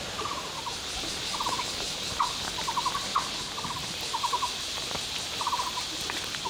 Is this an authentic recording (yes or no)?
yes